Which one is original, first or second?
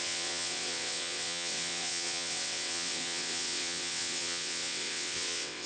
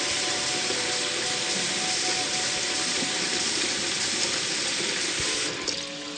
second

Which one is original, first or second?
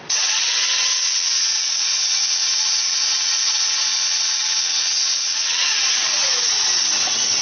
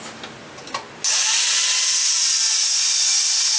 second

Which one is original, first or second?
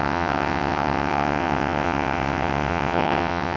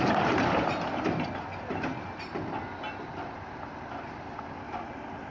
second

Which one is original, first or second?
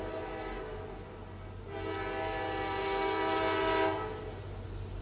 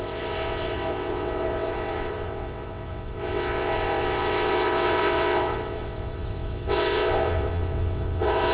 first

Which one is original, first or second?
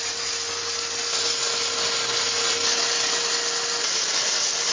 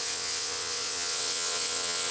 first